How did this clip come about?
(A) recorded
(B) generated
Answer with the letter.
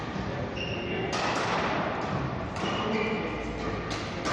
A